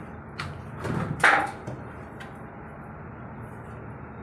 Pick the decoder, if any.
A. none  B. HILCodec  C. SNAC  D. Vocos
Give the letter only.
A